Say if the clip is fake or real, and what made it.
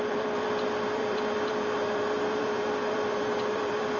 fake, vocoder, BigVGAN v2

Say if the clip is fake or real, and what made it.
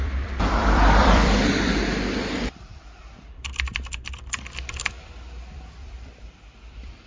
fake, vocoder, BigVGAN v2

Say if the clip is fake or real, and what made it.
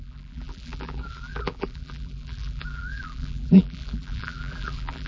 fake, vocoder, BigVGAN v2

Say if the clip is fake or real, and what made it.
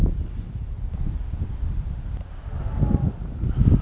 real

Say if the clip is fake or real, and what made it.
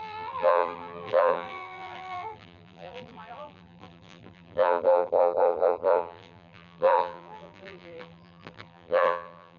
fake, vocoder, BigVGAN v2